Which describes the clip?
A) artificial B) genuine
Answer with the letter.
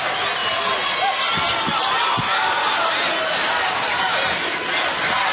B